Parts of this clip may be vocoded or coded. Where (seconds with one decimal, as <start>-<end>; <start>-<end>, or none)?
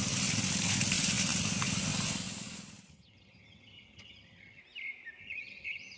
2.9-4.6; 5.2-6.0